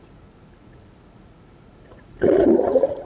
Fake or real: fake